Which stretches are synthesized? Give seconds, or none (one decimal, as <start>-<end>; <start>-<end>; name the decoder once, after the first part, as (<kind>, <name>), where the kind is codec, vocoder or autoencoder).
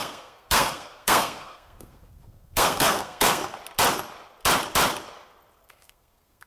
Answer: 0.0-3.4 (codec, SNAC); 5.7-6.5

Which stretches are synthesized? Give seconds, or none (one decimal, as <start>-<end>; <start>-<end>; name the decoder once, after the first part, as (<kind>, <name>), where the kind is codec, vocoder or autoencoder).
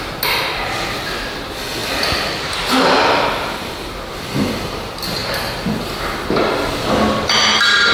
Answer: none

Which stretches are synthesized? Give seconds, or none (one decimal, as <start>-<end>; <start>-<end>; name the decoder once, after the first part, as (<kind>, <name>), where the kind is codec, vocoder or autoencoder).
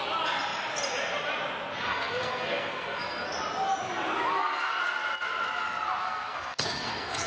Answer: 1.9-3.3 (codec, SNAC); 4.3-4.8; 6.0-7.3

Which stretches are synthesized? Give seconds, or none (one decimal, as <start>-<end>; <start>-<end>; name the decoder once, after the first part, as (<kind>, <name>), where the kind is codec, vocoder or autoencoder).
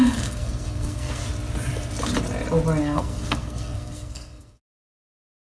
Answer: 0.0-1.2 (codec, SNAC); 2.8-5.4